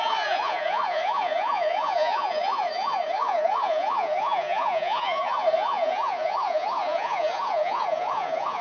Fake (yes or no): yes